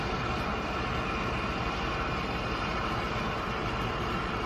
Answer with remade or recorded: remade